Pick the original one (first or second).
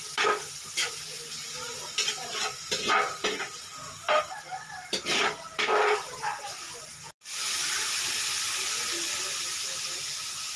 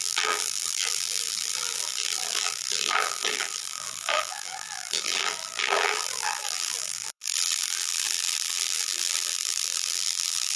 first